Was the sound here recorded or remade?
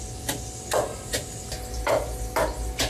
recorded